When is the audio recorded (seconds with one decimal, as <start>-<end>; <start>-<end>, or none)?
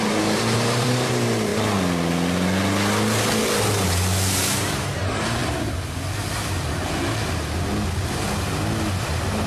1.5-4.5; 5.4-8.9